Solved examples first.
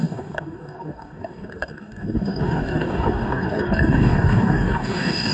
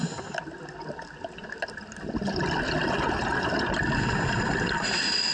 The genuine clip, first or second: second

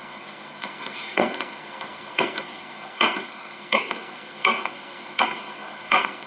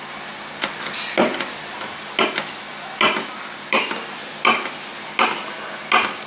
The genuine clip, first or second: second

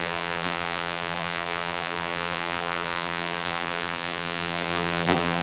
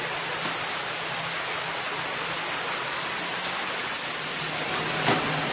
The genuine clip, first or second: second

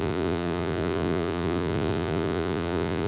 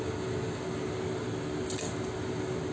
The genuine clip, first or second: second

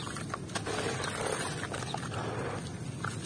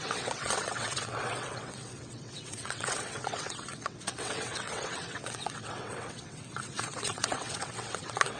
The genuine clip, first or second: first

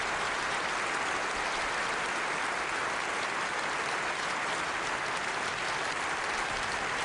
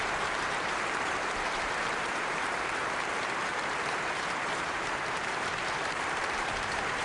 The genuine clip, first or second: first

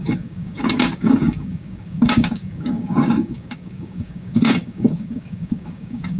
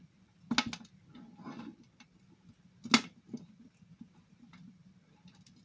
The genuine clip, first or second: second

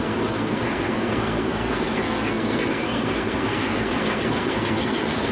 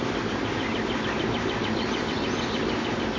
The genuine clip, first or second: second